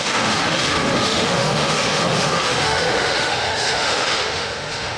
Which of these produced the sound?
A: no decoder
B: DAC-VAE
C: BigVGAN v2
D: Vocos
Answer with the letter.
B